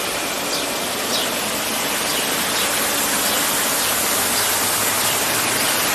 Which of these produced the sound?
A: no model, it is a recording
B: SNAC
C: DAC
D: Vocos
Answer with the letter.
A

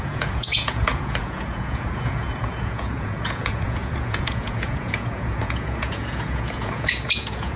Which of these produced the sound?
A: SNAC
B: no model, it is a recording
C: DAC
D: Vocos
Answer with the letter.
D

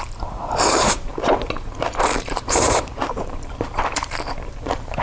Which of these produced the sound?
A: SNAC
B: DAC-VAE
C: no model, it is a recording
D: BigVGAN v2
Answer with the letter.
D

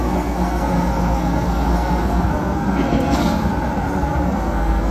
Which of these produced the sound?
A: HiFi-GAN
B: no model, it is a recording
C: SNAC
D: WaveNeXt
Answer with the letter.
C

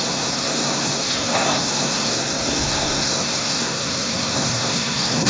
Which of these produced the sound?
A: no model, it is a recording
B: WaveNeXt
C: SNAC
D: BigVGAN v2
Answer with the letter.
C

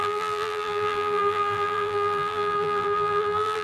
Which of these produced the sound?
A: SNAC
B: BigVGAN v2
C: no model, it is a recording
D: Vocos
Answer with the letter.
B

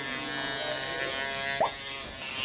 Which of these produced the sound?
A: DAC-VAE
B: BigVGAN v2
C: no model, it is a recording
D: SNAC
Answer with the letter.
C